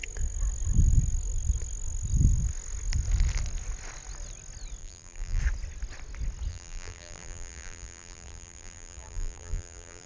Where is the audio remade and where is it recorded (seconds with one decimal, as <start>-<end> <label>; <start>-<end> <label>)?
0.0-4.8 recorded; 4.8-5.4 remade; 5.4-6.5 recorded; 6.5-10.1 remade